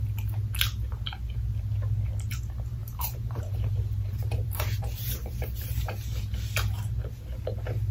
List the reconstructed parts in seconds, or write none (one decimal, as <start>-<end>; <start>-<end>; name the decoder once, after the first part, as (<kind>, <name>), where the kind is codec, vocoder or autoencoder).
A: 2.8-5.1 (vocoder, BigVGAN v2)